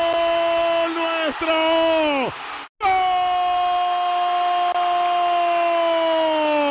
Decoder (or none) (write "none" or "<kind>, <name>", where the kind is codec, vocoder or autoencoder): none